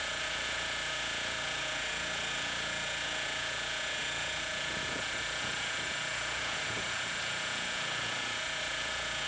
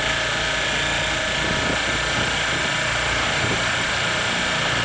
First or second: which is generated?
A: first